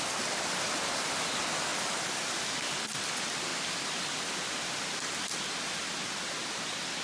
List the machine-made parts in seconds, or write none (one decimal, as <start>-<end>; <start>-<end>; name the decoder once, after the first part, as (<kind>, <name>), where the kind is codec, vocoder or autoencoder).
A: 1.7-2.5 (vocoder, BigVGAN v2)